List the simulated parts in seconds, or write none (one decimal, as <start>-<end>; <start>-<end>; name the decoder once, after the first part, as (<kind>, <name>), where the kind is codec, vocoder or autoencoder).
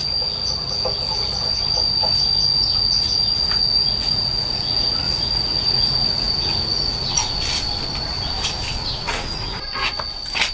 2.7-6.3 (vocoder, Vocos); 6.7-7.3; 8.7-9.9